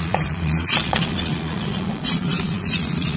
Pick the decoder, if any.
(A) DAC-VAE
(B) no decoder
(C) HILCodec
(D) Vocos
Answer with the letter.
D